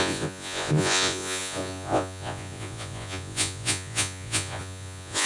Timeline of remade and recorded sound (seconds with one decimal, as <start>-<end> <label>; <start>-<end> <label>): 0.0-5.3 remade